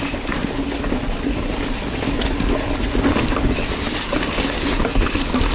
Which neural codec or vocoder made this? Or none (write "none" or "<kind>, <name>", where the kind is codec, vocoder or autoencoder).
none